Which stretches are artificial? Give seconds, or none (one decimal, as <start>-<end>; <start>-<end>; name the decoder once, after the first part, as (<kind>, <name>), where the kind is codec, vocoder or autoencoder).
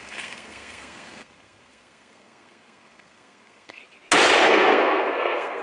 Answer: 0.0-3.8 (codec, SNAC); 4.4-5.6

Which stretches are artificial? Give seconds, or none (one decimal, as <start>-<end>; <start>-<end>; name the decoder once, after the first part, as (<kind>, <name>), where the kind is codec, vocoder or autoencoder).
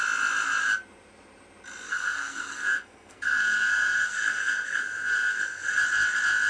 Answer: 1.9-5.8 (codec, SNAC)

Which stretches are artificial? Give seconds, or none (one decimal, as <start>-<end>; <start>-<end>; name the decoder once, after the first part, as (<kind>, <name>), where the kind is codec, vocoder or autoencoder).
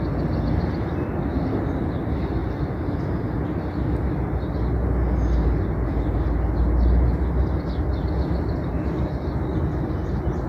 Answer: none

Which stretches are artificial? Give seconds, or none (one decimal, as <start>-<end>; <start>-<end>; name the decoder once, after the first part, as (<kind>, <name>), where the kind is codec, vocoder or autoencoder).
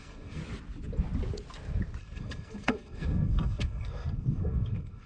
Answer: 0.0-0.4 (codec, SNAC); 2.0-5.1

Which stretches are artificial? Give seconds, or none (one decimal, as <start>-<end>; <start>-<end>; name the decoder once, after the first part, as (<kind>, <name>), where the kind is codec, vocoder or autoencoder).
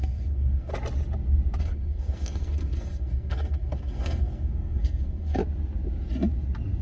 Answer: 0.0-0.7 (codec, SNAC); 1.6-5.4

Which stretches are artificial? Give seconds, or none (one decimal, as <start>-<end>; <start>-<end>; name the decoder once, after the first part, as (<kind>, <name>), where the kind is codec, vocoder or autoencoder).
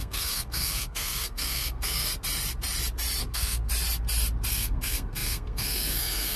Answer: 0.0-2.1 (codec, SNAC); 3.2-3.7; 4.5-6.4